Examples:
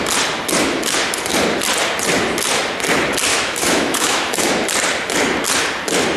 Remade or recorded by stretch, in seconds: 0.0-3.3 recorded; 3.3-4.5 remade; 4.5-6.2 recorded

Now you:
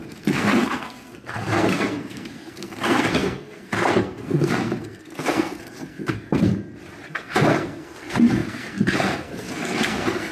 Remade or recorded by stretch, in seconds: 0.0-6.5 remade; 6.5-7.1 recorded; 7.1-10.3 remade

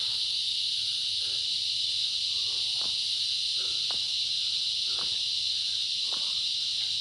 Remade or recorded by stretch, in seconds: 0.0-7.0 recorded

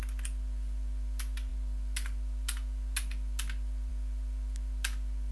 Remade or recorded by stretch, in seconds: 0.0-5.3 recorded

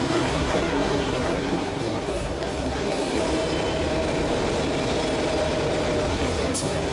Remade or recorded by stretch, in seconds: 0.0-3.2 remade; 3.2-6.1 recorded; 6.1-6.9 remade

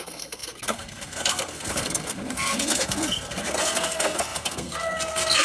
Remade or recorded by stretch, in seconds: 0.0-5.4 remade

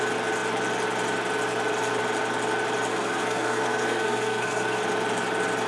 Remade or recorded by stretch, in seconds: 0.0-2.9 recorded; 2.9-4.8 remade; 4.8-5.7 recorded